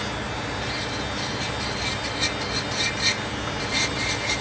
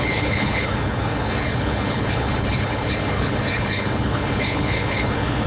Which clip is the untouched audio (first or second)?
first